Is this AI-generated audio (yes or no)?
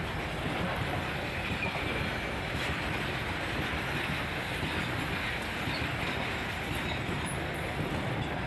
no